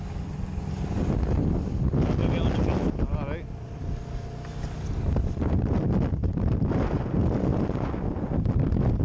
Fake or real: real